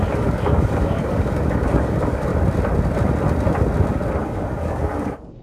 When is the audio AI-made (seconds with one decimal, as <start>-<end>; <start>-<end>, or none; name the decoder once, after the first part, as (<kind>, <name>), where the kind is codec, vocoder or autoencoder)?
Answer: 0.0-2.3 (codec, DAC); 4.2-5.4

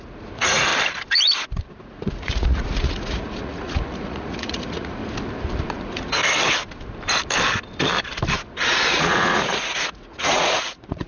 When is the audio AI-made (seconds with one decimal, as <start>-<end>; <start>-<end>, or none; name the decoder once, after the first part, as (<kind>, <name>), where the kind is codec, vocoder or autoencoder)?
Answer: 0.0-0.7 (vocoder, Vocos); 1.7-5.0; 5.7-6.2; 8.9-11.1

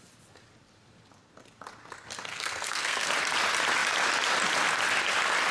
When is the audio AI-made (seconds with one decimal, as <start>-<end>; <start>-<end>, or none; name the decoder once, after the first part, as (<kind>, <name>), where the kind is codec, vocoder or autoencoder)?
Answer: 2.3-3.1 (codec, SNAC)